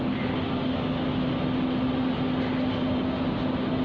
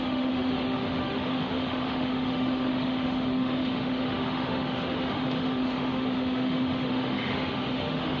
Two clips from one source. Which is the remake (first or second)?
second